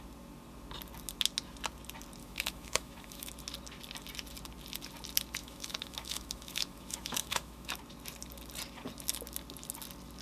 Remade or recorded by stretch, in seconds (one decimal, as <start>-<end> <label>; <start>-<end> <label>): 0.0-2.2 recorded; 2.2-3.3 remade; 3.3-5.4 recorded; 5.4-7.8 remade; 7.8-10.2 recorded